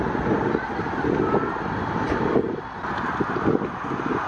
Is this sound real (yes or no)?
yes